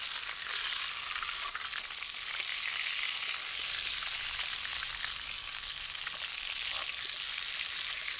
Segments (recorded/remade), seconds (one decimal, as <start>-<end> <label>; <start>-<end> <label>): 0.0-8.2 recorded